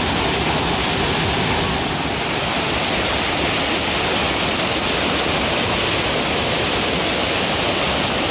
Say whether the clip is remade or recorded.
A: recorded